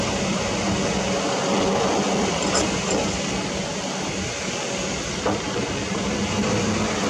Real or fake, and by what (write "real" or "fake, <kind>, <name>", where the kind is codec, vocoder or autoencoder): real